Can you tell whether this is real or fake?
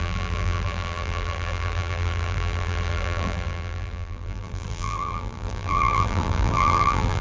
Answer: fake